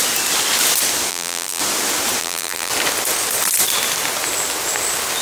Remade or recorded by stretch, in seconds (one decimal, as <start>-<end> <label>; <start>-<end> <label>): 0.0-1.1 recorded; 1.1-1.6 remade; 1.6-2.2 recorded; 2.2-2.7 remade; 2.7-5.2 recorded